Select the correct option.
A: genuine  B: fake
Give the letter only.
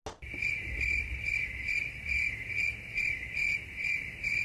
A